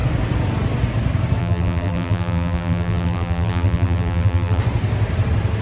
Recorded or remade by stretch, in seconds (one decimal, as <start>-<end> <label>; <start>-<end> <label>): 0.0-1.4 recorded; 1.4-4.6 remade; 4.6-5.6 recorded